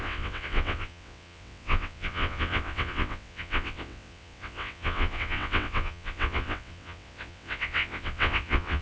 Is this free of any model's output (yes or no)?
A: no